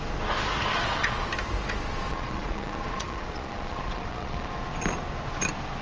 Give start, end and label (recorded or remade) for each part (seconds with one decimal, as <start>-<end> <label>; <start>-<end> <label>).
0.0-0.7 recorded; 0.7-1.3 remade; 1.3-2.1 recorded; 2.1-4.5 remade; 4.5-5.8 recorded